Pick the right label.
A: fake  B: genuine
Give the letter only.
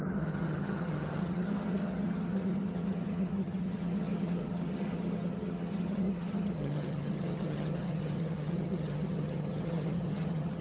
A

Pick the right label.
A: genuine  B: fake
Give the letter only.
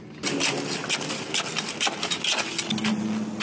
A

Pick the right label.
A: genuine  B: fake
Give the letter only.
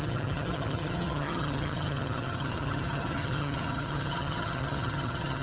B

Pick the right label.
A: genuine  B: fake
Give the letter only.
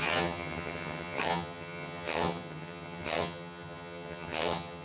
B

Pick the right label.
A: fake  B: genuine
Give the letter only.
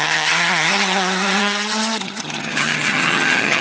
A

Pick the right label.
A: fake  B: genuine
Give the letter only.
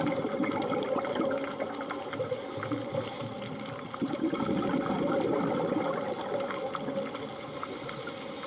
B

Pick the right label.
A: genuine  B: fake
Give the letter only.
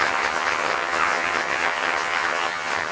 B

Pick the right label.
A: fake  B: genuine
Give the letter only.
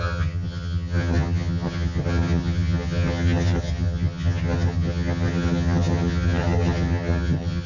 A